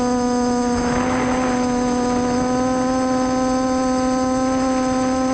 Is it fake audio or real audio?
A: real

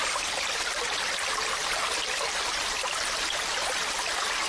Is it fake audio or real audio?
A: real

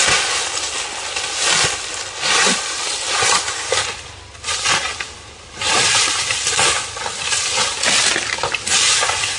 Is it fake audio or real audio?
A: real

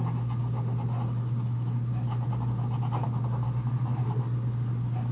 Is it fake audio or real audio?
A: real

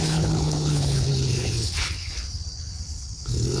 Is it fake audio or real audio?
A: fake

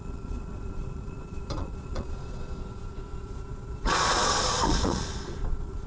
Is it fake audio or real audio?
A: fake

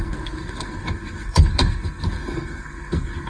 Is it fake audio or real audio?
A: fake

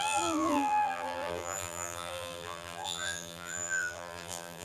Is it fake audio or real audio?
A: fake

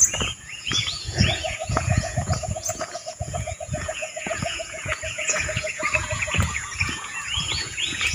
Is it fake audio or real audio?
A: fake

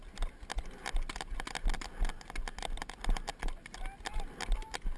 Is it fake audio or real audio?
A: real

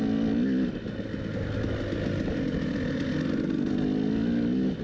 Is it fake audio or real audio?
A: real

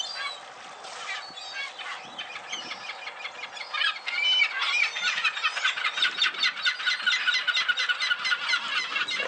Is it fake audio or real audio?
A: real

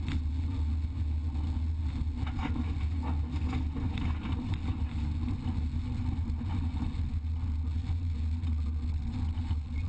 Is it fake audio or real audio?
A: real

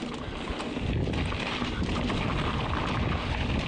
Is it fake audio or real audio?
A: real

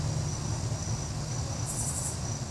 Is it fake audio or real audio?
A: real